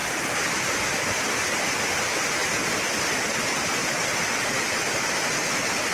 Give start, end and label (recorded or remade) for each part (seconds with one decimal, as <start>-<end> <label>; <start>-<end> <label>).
0.0-5.9 recorded